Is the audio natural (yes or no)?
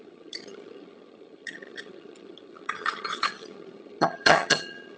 no